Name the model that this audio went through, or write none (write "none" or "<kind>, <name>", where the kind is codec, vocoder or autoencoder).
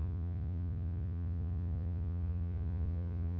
vocoder, Vocos